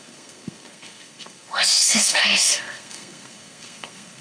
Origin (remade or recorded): remade